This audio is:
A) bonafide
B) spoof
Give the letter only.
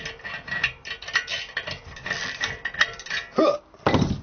A